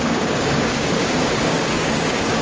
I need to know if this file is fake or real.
fake